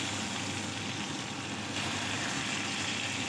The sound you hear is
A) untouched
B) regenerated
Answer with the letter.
A